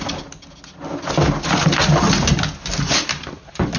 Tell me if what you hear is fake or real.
real